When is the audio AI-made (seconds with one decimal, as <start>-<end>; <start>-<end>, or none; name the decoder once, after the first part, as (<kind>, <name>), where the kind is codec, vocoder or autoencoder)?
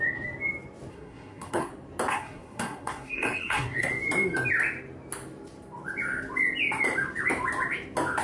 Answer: 0.9-1.7 (codec, SNAC); 2.1-3.9